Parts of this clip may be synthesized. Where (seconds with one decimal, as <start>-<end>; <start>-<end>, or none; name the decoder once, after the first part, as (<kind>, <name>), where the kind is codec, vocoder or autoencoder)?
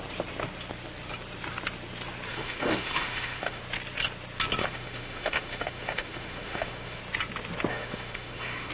2.3-3.6 (autoencoder, DAC-VAE); 4.6-7.0; 7.7-8.7